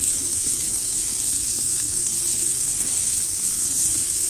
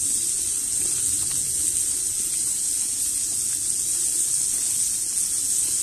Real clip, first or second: second